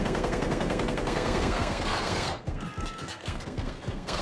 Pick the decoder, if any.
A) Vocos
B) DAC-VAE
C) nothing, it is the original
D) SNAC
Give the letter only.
D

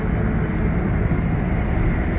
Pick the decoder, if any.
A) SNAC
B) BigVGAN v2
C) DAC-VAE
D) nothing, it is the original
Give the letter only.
D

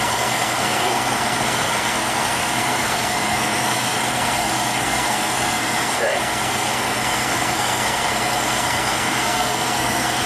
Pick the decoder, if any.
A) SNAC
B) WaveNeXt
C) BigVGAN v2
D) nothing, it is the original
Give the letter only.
A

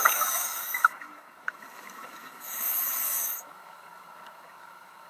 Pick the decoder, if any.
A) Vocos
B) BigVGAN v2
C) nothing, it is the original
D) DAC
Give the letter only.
D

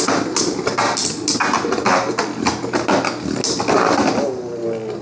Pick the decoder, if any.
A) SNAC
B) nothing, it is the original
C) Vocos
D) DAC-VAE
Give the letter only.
B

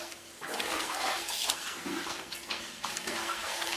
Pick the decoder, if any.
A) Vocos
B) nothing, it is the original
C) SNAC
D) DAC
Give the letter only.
C